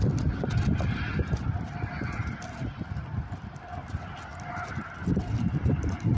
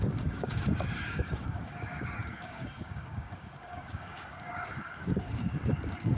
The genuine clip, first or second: first